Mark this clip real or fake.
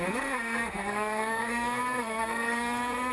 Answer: fake